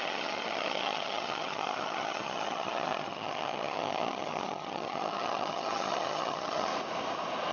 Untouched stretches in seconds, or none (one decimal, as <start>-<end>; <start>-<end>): 6.7-7.5